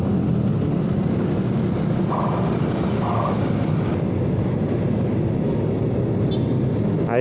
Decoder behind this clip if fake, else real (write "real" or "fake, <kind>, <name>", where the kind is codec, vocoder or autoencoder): real